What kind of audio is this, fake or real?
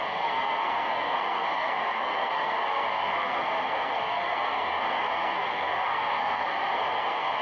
fake